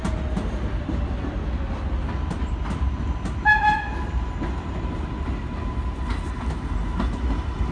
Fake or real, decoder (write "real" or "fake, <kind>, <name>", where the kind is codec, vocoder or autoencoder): real